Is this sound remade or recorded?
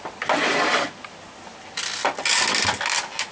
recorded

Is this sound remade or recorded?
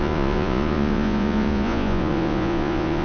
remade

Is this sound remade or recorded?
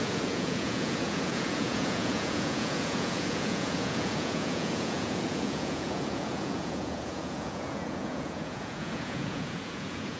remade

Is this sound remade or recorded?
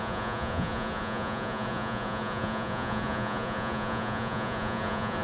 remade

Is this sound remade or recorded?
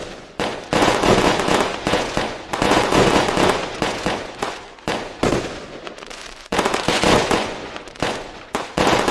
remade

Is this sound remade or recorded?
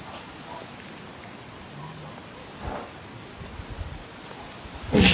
recorded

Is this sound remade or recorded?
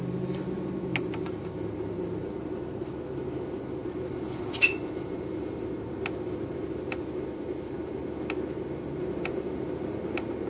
recorded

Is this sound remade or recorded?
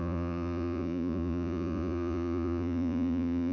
remade